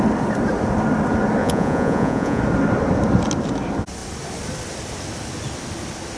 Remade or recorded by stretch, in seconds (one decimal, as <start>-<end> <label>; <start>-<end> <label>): 0.0-1.4 recorded; 1.4-2.4 remade; 2.4-6.2 recorded